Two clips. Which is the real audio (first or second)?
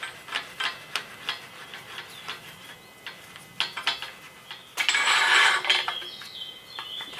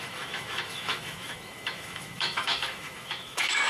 first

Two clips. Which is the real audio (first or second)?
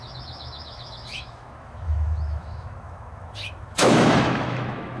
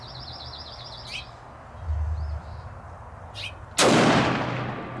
second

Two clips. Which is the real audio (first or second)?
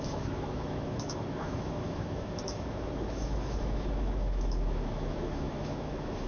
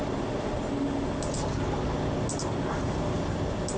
second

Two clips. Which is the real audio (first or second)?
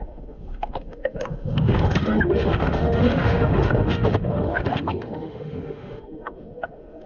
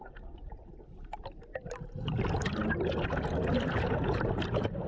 second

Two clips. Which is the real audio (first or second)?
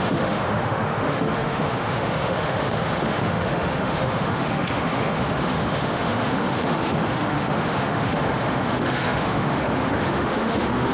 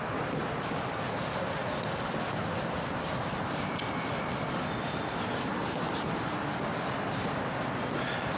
second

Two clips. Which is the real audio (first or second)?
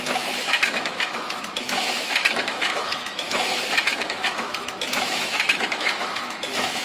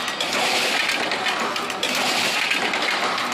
second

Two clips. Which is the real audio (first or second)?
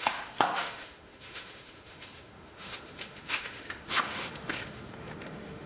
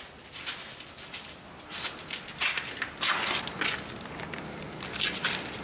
second